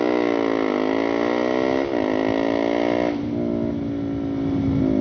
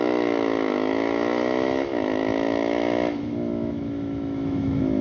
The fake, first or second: second